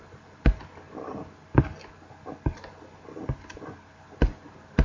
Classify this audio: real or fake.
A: real